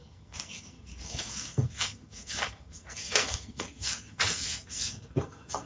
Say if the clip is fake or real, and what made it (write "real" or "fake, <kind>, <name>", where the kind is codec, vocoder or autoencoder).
fake, codec, SNAC